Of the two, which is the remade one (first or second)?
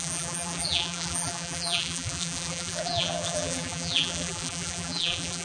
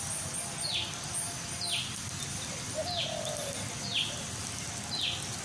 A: first